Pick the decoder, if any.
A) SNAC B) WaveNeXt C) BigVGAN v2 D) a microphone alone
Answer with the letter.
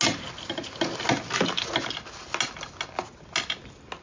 D